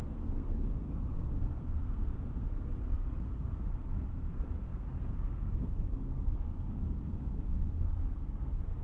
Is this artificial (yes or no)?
yes